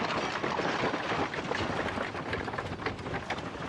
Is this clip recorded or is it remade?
recorded